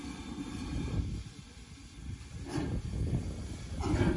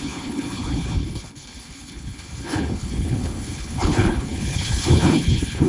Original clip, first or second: first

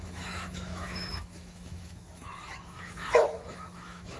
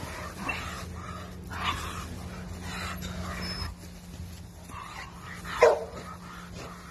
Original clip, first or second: second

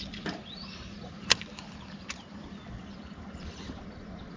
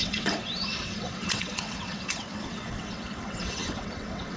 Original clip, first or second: first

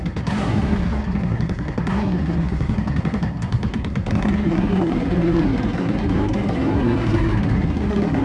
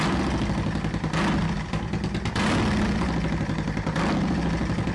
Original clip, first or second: second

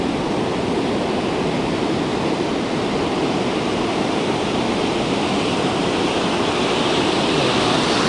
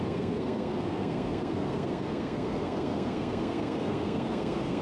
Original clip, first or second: first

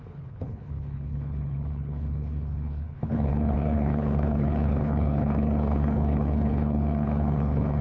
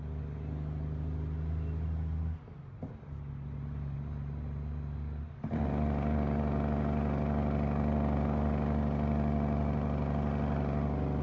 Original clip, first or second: second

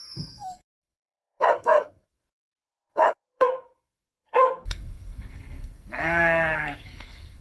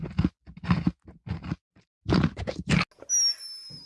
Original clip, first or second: second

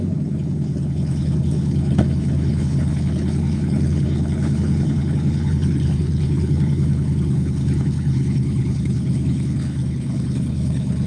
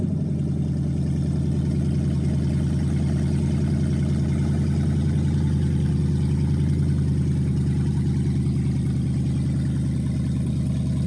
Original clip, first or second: second